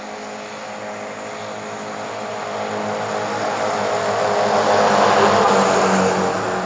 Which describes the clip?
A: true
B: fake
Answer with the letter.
A